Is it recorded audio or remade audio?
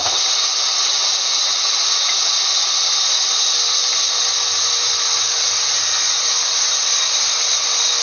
recorded